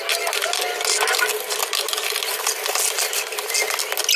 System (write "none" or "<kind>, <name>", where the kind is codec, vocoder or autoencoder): none